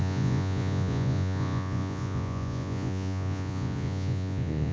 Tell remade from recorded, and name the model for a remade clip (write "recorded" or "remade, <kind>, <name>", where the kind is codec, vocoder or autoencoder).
remade, vocoder, Vocos